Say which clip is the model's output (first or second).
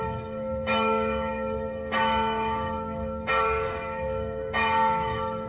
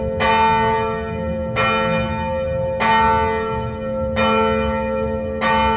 first